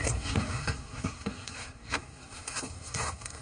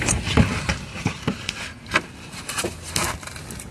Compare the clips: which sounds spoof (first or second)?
first